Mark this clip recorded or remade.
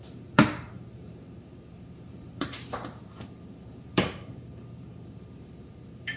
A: remade